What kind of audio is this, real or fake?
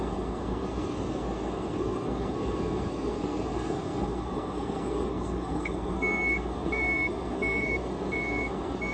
fake